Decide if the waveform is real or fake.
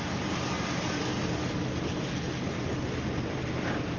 fake